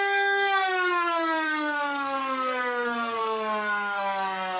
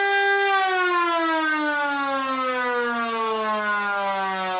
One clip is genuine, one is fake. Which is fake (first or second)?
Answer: first